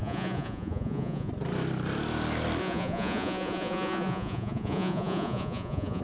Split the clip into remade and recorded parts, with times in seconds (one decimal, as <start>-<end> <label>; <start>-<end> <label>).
0.0-1.3 remade; 1.3-2.6 recorded; 2.6-6.0 remade

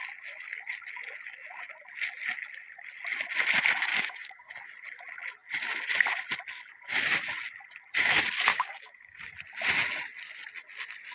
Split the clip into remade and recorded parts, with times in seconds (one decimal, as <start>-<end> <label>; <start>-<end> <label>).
0.0-3.9 recorded; 3.9-4.5 remade; 4.5-8.5 recorded; 8.5-9.3 remade; 9.3-11.1 recorded

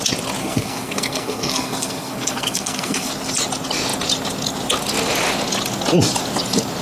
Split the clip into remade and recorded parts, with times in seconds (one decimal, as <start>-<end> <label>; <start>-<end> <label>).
0.0-0.4 recorded; 0.4-3.1 remade; 3.1-6.8 recorded

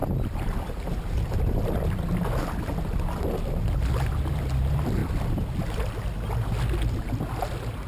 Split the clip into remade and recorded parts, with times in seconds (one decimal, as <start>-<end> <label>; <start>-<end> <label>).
0.0-1.9 remade; 1.9-7.9 recorded